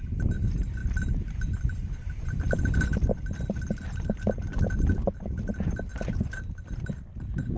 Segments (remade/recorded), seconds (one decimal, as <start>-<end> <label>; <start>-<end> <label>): 0.0-0.8 recorded; 0.8-5.4 remade; 5.4-5.9 recorded; 5.9-7.1 remade; 7.1-7.6 recorded